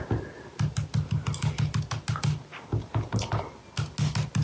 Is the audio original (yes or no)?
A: yes